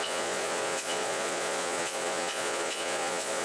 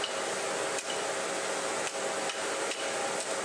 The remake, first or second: first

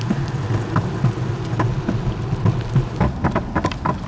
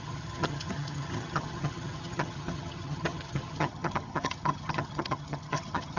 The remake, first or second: second